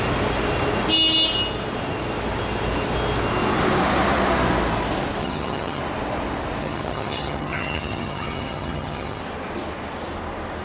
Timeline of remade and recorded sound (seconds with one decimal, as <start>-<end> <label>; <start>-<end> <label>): 0.0-5.2 recorded; 5.2-5.8 remade; 5.8-6.6 recorded; 6.6-9.2 remade; 9.2-10.6 recorded